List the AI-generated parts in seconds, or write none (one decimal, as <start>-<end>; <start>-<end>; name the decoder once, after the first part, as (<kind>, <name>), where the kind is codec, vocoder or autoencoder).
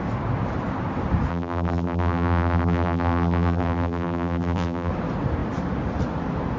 1.3-4.9 (vocoder, BigVGAN v2)